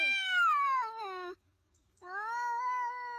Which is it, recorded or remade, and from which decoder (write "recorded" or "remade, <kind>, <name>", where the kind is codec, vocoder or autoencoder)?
remade, codec, DAC